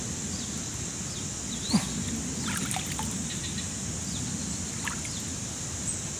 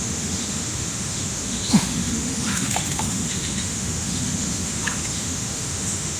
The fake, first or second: second